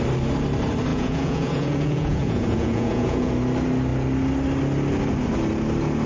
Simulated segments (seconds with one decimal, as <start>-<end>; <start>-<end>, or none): 0.9-3.3